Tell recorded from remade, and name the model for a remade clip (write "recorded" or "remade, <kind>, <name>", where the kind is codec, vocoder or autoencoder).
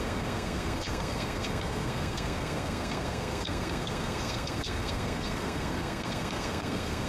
remade, codec, SNAC